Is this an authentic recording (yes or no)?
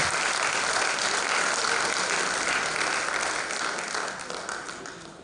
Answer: yes